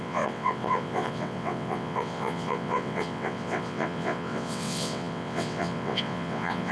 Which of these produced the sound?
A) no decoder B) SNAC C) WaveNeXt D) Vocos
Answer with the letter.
C